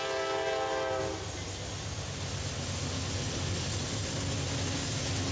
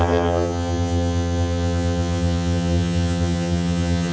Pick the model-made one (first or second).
second